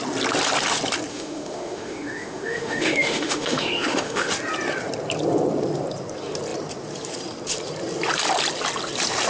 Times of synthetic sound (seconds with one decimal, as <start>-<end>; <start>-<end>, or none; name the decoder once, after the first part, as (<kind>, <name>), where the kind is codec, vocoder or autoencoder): 1.1-4.3 (autoencoder, DAC-VAE)